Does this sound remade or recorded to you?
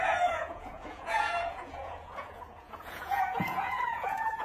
remade